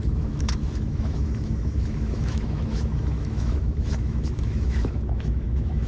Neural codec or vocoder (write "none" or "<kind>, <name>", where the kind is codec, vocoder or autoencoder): autoencoder, DAC-VAE